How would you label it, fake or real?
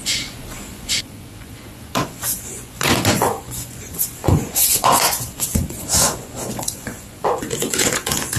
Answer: fake